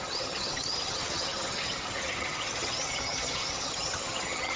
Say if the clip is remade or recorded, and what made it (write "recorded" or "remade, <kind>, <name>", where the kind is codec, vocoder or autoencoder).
remade, vocoder, HiFi-GAN